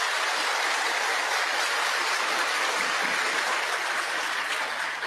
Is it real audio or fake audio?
real